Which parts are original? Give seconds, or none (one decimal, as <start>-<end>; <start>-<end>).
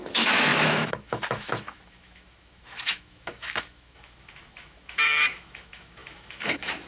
none